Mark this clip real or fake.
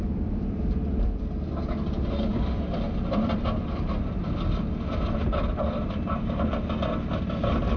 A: fake